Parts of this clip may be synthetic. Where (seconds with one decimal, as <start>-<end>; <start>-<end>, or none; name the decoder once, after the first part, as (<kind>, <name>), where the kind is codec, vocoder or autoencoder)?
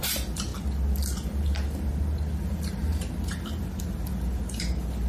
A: 0.0-0.5 (vocoder, BigVGAN v2); 1.3-1.9; 2.4-5.1